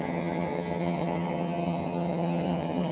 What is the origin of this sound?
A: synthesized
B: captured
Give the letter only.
A